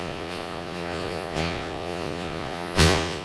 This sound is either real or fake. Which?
fake